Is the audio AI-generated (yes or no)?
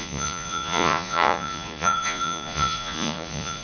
yes